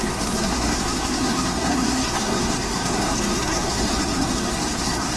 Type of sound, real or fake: fake